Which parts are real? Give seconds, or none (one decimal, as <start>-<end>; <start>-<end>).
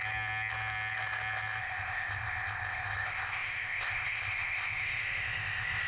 0.0-1.6